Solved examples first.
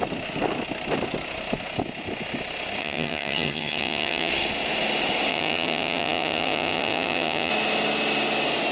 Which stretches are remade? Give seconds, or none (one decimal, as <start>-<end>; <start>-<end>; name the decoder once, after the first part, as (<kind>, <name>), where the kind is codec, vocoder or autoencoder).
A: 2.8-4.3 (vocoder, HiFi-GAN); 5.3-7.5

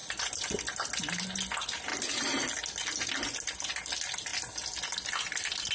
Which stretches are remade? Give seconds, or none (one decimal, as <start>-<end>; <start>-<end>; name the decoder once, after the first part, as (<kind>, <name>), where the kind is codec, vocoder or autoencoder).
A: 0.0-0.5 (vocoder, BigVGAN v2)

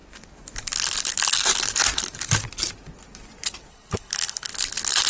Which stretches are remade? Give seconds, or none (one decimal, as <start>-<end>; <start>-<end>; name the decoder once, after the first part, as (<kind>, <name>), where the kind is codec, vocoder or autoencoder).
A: 3.7-4.5 (codec, HILCodec)